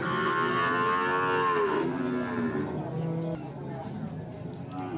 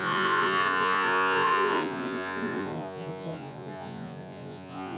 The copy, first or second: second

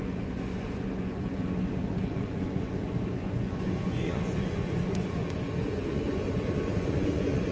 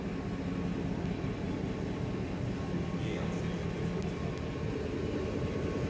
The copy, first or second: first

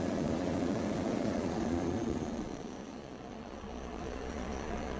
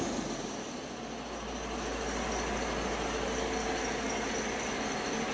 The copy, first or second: first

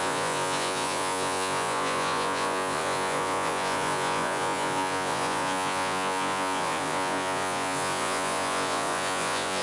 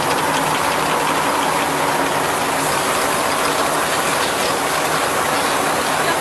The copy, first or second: first